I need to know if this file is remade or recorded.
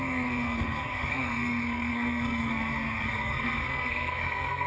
remade